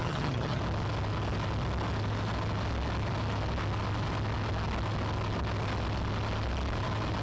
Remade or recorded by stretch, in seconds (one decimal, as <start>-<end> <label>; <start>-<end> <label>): 0.0-0.6 remade; 0.6-7.2 recorded